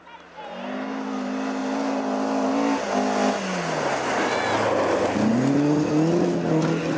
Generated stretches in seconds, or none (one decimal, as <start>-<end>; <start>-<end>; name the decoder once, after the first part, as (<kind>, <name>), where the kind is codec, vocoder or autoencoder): none